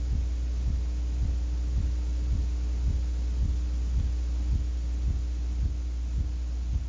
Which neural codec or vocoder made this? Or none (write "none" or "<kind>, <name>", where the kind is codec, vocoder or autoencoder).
none